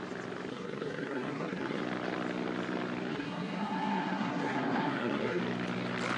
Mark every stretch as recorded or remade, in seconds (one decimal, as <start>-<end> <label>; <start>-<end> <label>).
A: 0.0-0.5 recorded; 0.5-1.8 remade; 1.8-3.1 recorded; 3.1-5.4 remade; 5.4-6.2 recorded